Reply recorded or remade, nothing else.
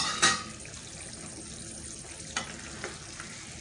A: recorded